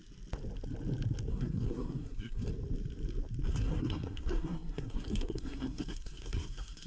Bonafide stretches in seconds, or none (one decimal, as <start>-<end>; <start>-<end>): 0.0-1.3; 2.5-3.5